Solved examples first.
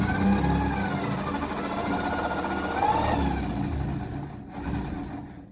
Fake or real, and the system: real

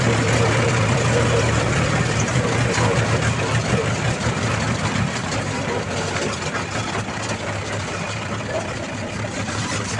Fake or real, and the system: fake, vocoder, BigVGAN v2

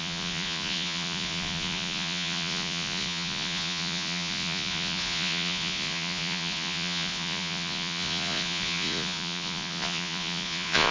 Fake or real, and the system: fake, vocoder, Vocos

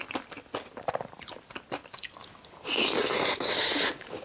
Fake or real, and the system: real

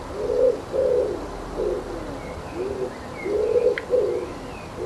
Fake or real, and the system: real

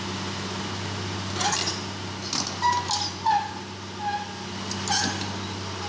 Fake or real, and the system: real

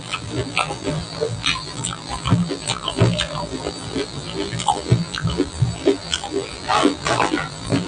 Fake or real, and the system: fake, vocoder, BigVGAN v2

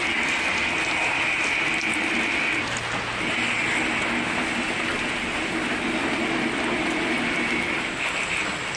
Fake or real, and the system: real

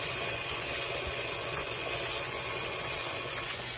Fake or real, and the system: fake, vocoder, Vocos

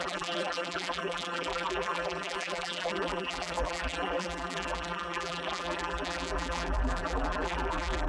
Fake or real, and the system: fake, vocoder, BigVGAN v2